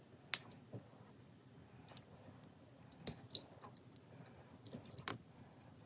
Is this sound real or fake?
real